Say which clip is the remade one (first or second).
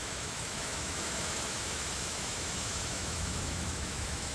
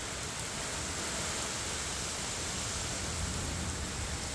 first